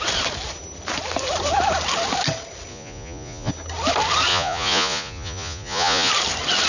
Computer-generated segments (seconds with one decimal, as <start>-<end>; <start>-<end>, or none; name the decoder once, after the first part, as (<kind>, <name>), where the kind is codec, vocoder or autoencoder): 2.7-3.5 (vocoder, Vocos); 4.3-6.1